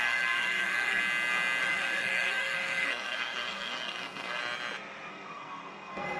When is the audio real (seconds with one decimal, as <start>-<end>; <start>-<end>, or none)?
1.0-1.6; 4.4-5.1